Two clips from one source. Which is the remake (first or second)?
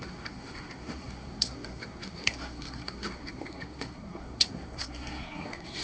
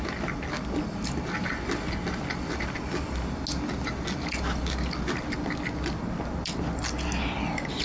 first